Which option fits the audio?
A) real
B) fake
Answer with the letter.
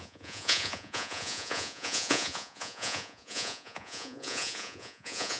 B